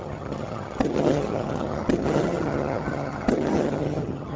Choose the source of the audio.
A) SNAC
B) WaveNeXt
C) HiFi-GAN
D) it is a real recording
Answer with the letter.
C